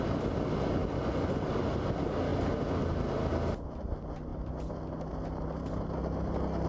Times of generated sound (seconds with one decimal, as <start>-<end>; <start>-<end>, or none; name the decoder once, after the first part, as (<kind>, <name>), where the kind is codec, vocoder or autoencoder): none

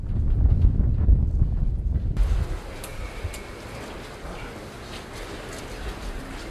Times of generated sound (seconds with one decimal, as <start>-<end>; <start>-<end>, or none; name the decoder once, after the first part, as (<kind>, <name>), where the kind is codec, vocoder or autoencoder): none

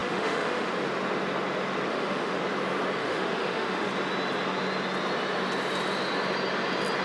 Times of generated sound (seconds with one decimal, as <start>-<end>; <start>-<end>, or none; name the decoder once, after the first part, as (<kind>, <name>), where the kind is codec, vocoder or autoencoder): 0.0-0.7 (autoencoder, DAC-VAE); 1.9-2.4; 3.0-3.9

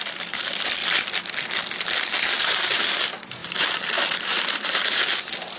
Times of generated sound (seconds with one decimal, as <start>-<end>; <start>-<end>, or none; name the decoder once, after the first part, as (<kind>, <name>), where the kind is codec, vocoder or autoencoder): 0.0-0.8 (vocoder, BigVGAN v2); 2.2-5.6

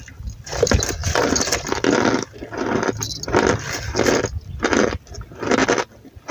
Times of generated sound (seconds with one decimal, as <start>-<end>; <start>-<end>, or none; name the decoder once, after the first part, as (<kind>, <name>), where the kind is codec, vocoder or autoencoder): 1.0-3.8 (vocoder, BigVGAN v2)

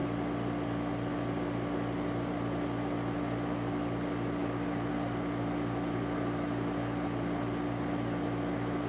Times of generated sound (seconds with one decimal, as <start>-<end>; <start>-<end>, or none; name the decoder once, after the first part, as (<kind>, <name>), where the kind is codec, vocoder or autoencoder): none

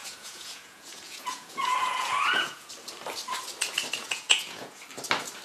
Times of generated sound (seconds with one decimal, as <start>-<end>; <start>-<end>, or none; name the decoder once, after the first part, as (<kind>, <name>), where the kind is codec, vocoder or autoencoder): 0.0-2.7 (vocoder, Vocos); 4.0-4.8